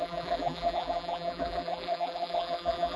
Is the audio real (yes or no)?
no